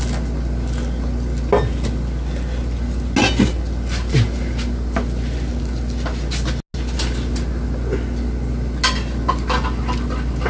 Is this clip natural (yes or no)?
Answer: yes